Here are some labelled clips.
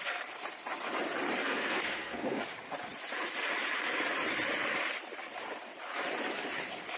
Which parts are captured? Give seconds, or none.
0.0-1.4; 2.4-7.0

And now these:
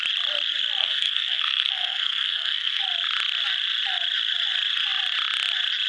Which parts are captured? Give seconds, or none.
0.0-0.8; 2.8-5.9

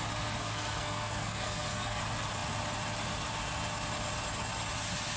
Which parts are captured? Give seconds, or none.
0.0-0.4; 2.0-5.2

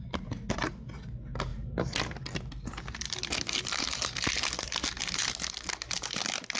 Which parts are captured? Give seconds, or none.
0.0-6.6

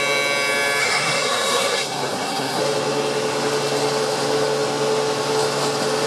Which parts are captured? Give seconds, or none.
0.0-0.8; 2.6-6.1

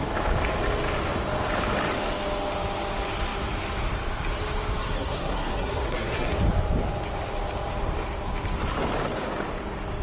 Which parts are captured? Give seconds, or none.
0.0-4.8; 6.3-10.0